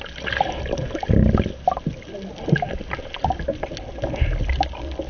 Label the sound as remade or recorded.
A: recorded